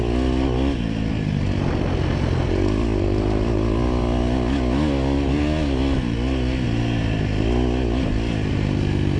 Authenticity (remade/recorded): recorded